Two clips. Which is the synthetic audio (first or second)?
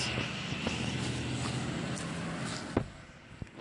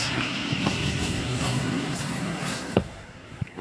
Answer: second